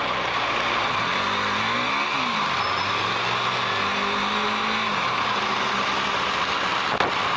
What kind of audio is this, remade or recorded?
recorded